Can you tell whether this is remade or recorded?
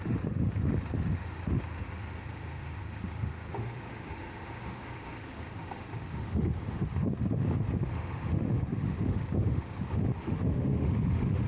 remade